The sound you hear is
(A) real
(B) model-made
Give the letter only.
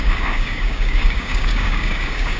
B